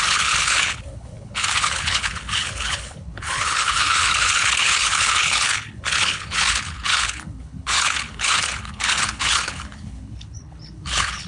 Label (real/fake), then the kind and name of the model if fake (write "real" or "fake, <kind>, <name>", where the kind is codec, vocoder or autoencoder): fake, codec, HILCodec